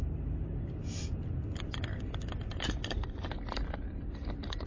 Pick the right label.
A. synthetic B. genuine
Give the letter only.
B